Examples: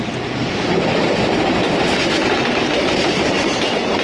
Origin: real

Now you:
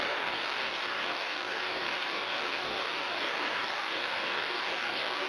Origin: fake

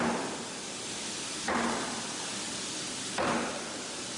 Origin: real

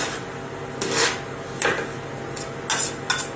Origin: real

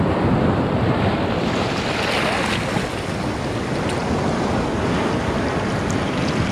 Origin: real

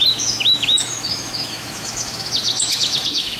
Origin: fake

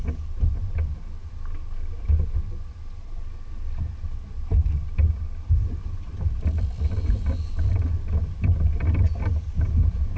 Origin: real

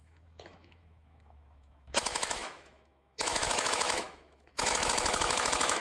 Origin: fake